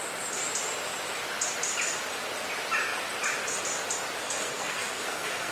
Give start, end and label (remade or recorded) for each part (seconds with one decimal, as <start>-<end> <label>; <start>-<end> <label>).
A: 0.0-4.2 recorded; 4.2-5.5 remade